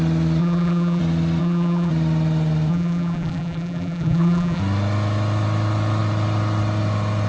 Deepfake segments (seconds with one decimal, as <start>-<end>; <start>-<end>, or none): 0.4-1.0; 1.4-1.9; 2.7-4.6